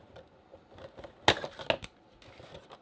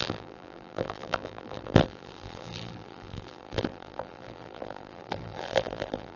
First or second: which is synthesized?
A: second